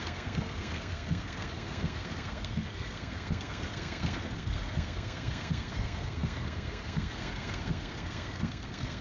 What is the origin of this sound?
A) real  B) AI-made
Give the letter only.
B